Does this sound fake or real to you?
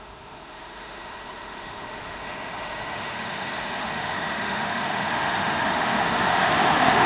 fake